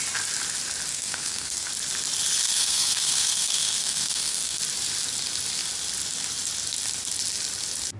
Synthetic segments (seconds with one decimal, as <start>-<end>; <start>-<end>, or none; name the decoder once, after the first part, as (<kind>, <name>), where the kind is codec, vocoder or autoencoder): 0.9-1.7 (codec, SNAC); 2.4-4.6